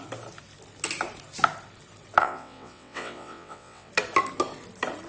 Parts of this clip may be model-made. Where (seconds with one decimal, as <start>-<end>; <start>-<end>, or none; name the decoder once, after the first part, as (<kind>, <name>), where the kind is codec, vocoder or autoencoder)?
2.2-3.9 (vocoder, WaveNeXt)